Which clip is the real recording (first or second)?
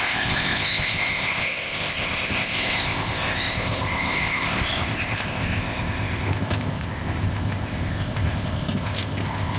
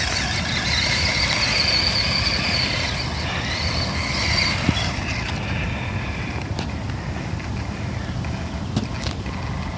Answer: second